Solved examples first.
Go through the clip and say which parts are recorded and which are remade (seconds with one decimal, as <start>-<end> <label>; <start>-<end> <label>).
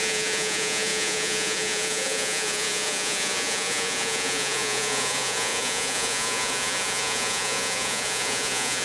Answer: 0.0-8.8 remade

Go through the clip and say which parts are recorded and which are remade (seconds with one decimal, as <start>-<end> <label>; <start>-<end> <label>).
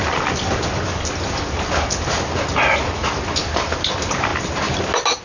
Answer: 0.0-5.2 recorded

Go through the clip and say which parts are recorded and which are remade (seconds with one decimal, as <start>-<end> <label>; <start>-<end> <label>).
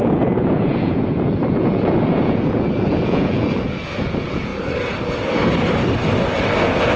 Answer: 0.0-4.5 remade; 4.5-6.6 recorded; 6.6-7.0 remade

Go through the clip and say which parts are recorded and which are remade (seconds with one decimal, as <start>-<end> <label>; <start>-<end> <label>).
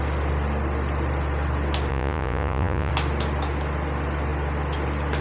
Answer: 0.0-1.9 recorded; 1.9-2.9 remade; 2.9-5.2 recorded